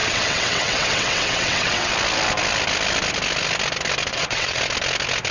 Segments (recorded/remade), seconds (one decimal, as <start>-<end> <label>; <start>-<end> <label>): 0.0-1.9 remade; 1.9-4.1 recorded; 4.1-4.6 remade; 4.6-5.3 recorded